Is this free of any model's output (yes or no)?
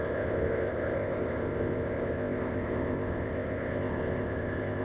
no